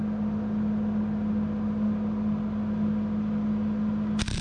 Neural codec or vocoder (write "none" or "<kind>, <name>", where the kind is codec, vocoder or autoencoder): none